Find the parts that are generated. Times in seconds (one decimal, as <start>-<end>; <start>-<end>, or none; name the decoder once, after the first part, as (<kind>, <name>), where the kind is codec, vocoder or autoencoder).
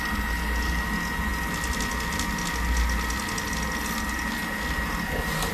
none